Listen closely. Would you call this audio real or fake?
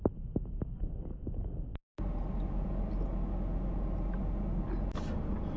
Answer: real